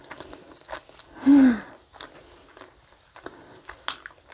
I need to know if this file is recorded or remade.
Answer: recorded